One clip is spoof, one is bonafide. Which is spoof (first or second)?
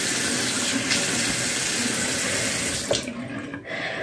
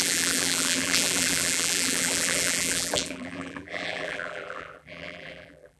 second